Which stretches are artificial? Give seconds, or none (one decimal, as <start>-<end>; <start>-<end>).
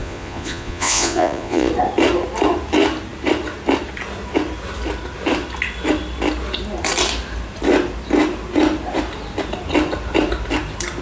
0.0-1.7